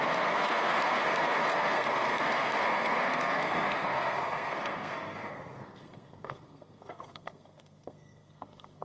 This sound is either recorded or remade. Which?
remade